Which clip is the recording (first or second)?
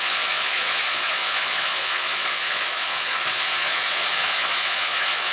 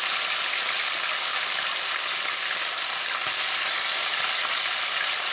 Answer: second